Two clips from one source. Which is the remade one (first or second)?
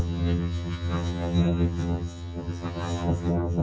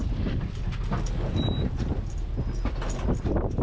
first